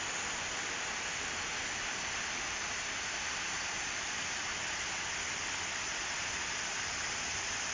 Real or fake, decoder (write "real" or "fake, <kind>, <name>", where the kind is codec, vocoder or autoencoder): real